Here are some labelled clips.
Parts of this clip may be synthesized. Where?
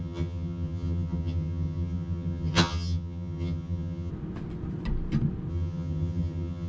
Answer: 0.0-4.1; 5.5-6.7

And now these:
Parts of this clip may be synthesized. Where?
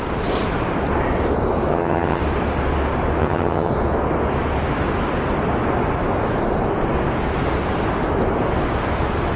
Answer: 1.7-2.2; 3.2-3.7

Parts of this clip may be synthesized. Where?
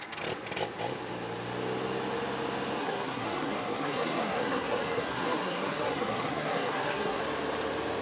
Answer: 2.8-7.2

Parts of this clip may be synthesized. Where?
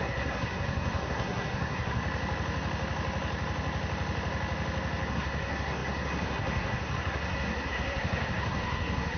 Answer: 0.0-2.0; 5.1-9.2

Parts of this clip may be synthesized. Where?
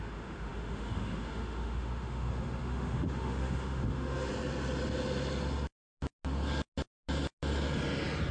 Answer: 0.0-4.3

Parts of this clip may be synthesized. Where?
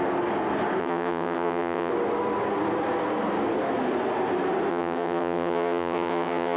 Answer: 0.8-1.9; 4.7-6.6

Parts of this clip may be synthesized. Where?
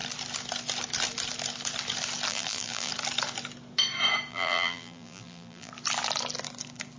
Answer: 2.3-2.9; 4.3-5.7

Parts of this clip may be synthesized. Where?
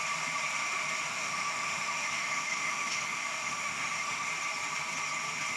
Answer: 1.1-4.3